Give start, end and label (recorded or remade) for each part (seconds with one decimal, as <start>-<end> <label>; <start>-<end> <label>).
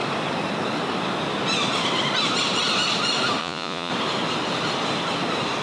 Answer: 0.0-3.4 recorded; 3.4-3.9 remade; 3.9-5.6 recorded